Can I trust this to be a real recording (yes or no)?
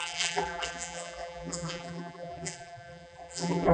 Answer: no